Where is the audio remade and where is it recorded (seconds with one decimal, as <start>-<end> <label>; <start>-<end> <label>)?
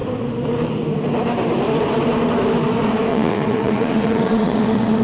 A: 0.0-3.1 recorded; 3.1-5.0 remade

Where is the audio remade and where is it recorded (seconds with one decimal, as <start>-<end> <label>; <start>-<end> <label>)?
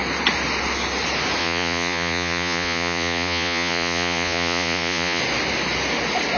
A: 0.0-1.4 recorded; 1.4-5.2 remade; 5.2-6.4 recorded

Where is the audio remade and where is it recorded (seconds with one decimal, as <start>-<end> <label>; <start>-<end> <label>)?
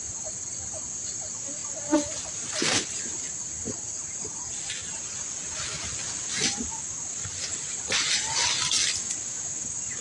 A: 0.0-10.0 recorded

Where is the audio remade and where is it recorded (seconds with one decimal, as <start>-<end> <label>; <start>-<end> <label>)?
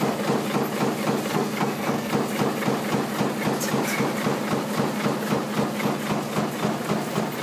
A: 0.0-1.3 recorded; 1.3-2.1 remade; 2.1-7.4 recorded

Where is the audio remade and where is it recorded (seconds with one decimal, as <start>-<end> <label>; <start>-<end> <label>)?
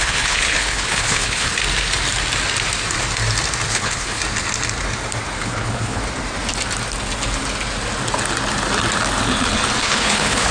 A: 0.0-1.6 remade; 1.6-3.7 recorded; 3.7-4.2 remade; 4.2-5.4 recorded; 5.4-6.0 remade; 6.0-9.8 recorded; 9.8-10.5 remade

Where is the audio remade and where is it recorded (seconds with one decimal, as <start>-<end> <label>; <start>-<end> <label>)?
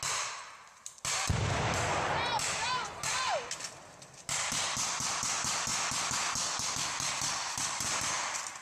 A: 0.0-8.6 recorded